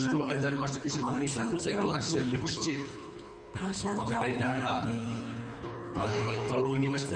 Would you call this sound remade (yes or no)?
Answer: yes